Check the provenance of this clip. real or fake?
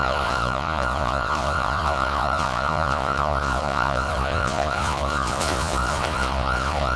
fake